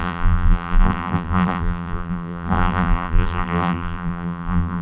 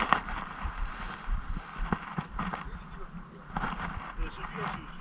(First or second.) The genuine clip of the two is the second